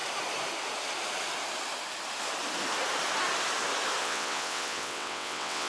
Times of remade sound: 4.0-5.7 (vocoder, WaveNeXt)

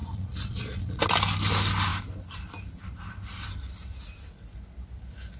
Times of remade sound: 0.0-1.0 (vocoder, Vocos)

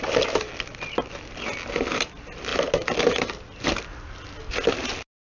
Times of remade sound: none

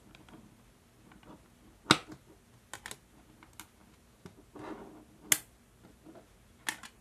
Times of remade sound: none

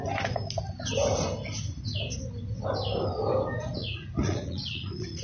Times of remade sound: 3.8-5.2 (vocoder, Vocos)

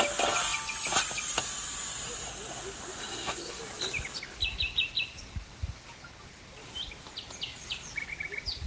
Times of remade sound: 3.0-3.6 (codec, SNAC)

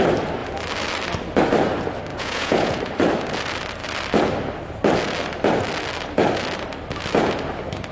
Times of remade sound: 2.1-2.8 (vocoder, Vocos)